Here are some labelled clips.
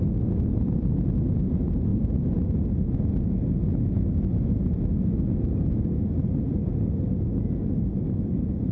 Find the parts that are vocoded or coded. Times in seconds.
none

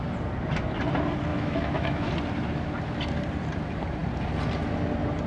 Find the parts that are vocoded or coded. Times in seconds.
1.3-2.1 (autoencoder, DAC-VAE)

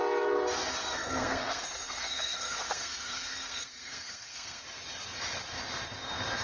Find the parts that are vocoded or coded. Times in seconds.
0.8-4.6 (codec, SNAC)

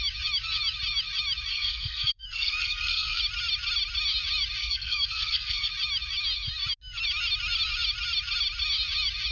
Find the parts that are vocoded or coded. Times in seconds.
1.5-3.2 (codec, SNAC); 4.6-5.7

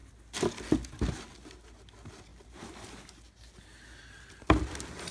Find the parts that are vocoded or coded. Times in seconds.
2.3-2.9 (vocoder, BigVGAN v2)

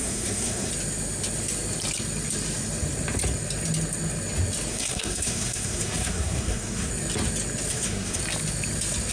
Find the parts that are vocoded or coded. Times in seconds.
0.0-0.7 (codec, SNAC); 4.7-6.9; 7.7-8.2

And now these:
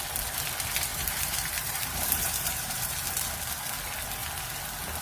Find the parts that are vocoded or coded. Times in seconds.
0.9-2.9 (vocoder, BigVGAN v2)

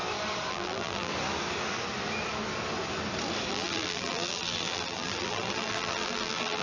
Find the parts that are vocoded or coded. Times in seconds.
0.5-1.1 (vocoder, BigVGAN v2); 3.5-6.6